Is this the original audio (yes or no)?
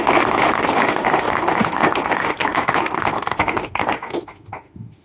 no